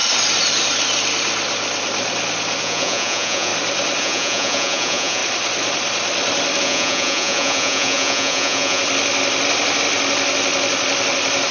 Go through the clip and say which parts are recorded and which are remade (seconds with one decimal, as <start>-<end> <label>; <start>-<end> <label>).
0.0-2.6 recorded; 2.6-3.5 remade; 3.5-4.0 recorded; 4.0-5.2 remade; 5.2-6.6 recorded; 6.6-8.8 remade; 8.8-11.5 recorded